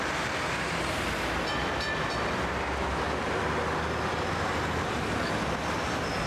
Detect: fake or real real